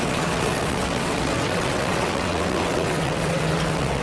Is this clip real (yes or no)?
no